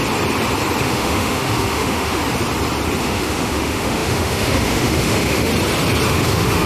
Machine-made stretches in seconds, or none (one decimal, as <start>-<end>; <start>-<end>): 0.8-2.2; 3.0-5.5; 6.1-6.7